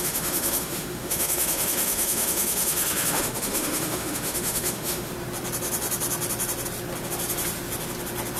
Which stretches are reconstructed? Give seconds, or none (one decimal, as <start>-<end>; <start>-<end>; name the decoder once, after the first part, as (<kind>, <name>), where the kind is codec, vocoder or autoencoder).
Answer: 0.0-5.1 (autoencoder, DAC-VAE)